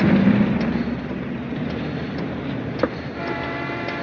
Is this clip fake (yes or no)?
no